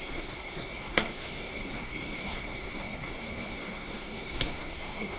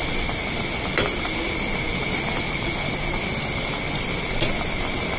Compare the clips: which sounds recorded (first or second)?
second